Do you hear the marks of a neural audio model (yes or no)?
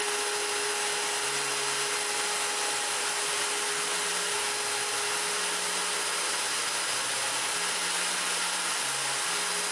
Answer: no